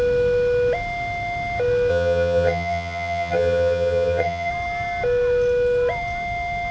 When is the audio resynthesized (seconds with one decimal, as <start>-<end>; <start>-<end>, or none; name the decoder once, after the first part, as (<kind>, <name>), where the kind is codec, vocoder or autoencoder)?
1.9-4.5 (vocoder, HiFi-GAN)